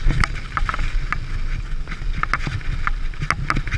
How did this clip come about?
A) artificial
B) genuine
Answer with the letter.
B